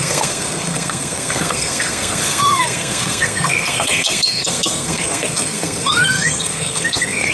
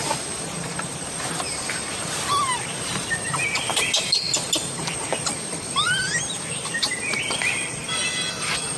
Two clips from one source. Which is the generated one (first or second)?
first